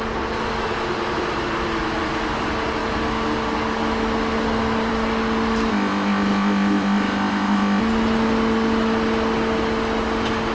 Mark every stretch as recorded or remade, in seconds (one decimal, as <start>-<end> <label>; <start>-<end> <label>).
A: 0.0-5.7 recorded; 5.7-7.8 remade; 7.8-10.5 recorded